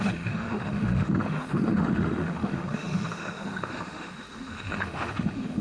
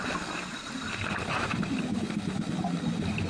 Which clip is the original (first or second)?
second